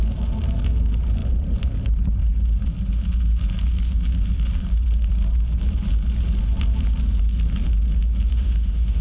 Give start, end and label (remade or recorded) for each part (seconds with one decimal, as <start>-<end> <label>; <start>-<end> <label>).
0.0-8.3 recorded; 8.3-9.0 remade